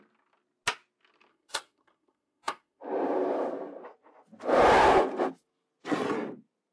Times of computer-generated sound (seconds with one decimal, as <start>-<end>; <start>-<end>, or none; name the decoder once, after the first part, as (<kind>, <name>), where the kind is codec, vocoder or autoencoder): 1.3-2.8 (codec, SNAC)